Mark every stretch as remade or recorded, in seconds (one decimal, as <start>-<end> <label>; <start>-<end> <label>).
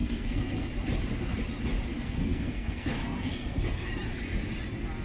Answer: 0.0-0.7 remade; 0.7-1.9 recorded; 1.9-3.9 remade; 3.9-5.0 recorded